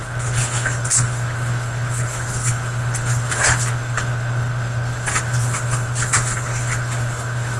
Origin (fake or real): fake